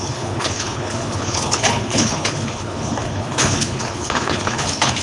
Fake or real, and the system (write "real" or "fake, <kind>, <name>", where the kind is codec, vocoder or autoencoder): fake, codec, HILCodec